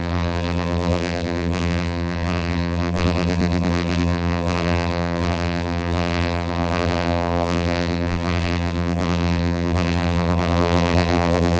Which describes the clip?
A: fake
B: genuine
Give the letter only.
A